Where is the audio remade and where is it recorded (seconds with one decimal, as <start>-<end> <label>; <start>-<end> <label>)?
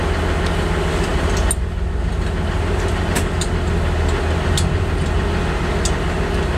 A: 0.0-6.6 recorded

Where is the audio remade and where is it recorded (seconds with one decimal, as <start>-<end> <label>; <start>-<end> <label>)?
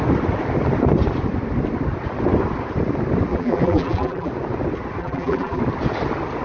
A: 0.0-3.3 recorded; 3.3-4.3 remade; 4.3-5.0 recorded; 5.0-5.6 remade; 5.6-6.4 recorded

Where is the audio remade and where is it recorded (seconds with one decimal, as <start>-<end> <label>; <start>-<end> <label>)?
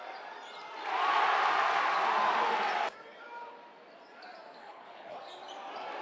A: 0.0-4.6 recorded; 4.6-5.2 remade; 5.2-6.0 recorded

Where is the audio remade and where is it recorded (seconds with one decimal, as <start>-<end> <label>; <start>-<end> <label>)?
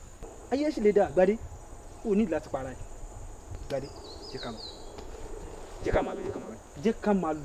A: 0.0-5.8 recorded; 5.8-6.5 remade; 6.5-7.4 recorded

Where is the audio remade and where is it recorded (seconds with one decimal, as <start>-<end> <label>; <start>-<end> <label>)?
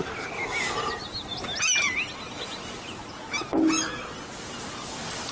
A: 0.0-5.3 recorded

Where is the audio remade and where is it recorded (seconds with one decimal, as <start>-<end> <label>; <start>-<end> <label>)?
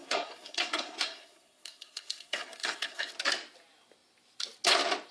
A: 0.0-3.1 remade; 3.1-5.1 recorded